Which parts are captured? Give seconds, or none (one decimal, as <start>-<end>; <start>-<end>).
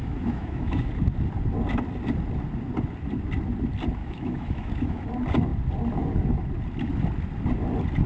0.9-4.0; 5.0-8.1